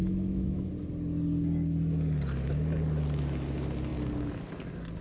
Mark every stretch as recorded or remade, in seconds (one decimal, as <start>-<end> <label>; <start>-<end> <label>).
0.0-0.7 remade; 0.7-5.0 recorded